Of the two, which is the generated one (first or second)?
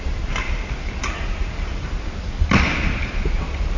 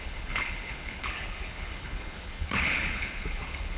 second